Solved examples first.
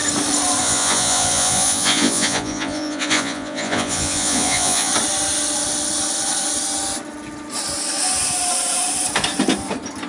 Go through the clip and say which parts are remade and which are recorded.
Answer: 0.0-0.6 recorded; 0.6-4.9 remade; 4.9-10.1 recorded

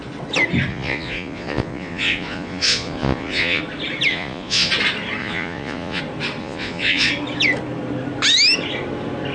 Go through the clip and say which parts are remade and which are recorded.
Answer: 0.0-0.7 recorded; 0.7-3.6 remade; 3.6-4.1 recorded; 4.1-4.7 remade; 4.7-5.2 recorded; 5.2-6.0 remade; 6.0-6.4 recorded; 6.4-7.1 remade; 7.1-9.3 recorded

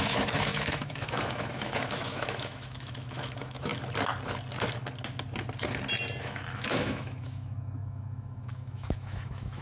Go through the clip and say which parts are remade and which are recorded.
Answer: 0.0-3.7 remade; 3.7-6.2 recorded; 6.2-9.6 remade

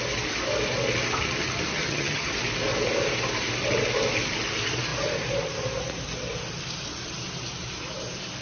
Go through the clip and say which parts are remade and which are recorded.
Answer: 0.0-1.7 recorded; 1.7-2.3 remade; 2.3-8.4 recorded

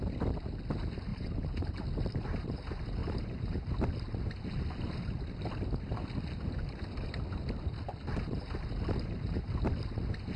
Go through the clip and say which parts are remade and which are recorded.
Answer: 0.0-1.1 recorded; 1.1-1.7 remade; 1.7-3.0 recorded; 3.0-3.7 remade; 3.7-10.4 recorded